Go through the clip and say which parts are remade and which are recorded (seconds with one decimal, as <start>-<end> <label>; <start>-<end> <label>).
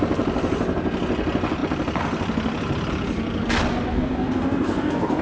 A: 0.0-3.9 recorded; 3.9-5.2 remade